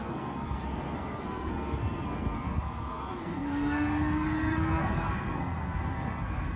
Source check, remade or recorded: remade